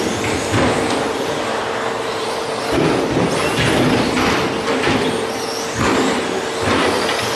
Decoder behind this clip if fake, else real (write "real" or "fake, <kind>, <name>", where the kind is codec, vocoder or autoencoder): real